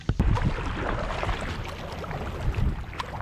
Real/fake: real